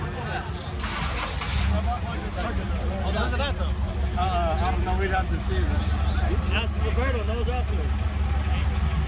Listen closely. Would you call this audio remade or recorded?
recorded